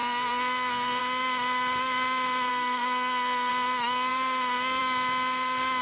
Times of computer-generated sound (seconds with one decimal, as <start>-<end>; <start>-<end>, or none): 0.0-1.0; 2.5-3.5